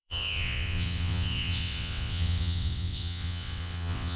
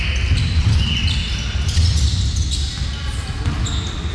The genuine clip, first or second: second